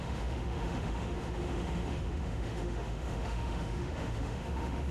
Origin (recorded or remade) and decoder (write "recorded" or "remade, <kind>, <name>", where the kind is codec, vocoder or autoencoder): remade, autoencoder, DAC-VAE